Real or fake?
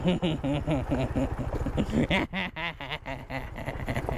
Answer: real